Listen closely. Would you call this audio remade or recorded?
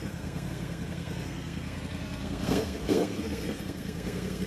remade